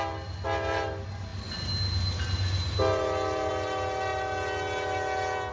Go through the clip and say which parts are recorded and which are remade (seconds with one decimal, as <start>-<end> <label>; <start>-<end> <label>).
0.0-5.5 recorded